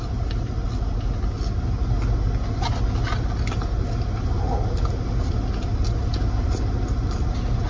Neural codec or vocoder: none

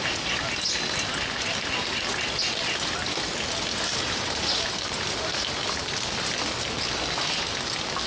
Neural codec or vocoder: none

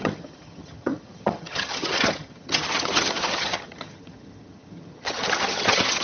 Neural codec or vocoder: vocoder, HiFi-GAN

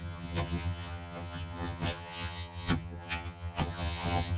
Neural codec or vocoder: vocoder, HiFi-GAN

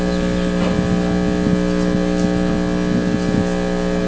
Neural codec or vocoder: none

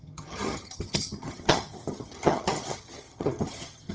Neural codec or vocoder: vocoder, HiFi-GAN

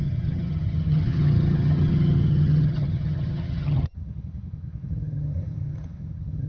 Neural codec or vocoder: vocoder, HiFi-GAN